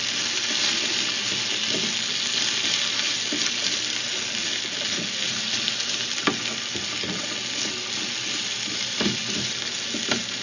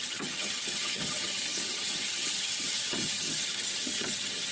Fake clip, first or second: second